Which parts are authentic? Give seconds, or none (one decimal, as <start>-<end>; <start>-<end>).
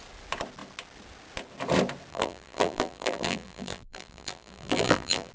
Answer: 0.0-2.1